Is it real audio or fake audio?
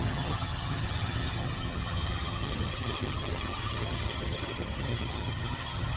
fake